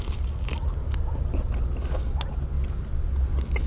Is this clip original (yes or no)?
yes